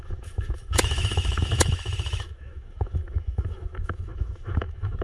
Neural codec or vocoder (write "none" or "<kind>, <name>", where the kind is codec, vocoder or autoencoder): autoencoder, DAC-VAE